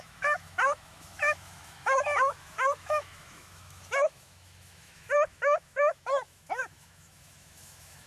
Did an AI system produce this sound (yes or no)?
yes